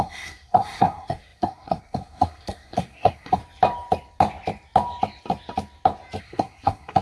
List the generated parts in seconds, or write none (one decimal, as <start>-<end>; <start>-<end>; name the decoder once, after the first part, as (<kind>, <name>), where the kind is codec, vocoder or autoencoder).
0.0-3.4 (codec, SNAC); 6.2-7.0